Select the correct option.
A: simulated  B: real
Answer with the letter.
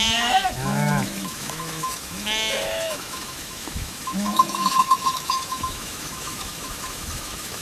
A